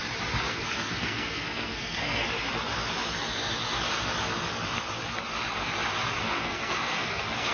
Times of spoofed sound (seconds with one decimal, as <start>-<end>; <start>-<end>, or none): 0.5-2.2; 6.2-7.5